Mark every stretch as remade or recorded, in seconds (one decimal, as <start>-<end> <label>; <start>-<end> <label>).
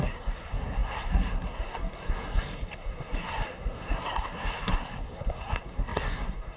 0.0-6.6 remade